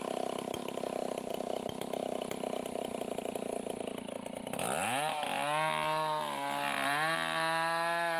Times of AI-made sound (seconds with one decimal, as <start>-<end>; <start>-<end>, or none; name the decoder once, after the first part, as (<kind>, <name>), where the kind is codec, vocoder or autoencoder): none